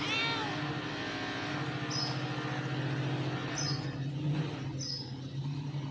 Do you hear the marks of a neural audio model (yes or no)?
no